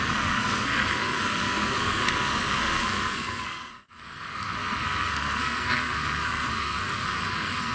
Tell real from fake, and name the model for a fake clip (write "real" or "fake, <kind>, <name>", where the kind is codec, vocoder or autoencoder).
fake, codec, SNAC